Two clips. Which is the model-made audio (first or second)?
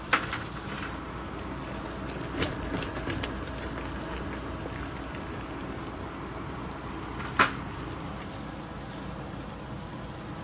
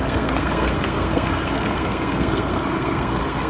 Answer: second